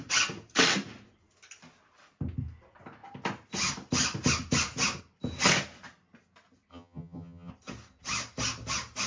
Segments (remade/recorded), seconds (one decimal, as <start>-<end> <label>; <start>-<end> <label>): 0.0-6.7 recorded; 6.7-7.5 remade; 7.5-9.1 recorded